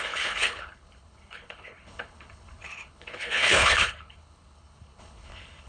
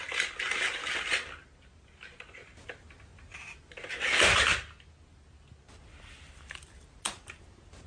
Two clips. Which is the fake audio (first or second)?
first